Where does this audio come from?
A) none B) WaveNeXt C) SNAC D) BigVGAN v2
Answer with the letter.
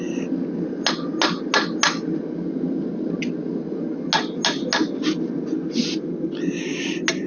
A